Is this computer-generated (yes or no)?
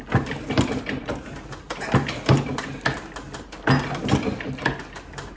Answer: no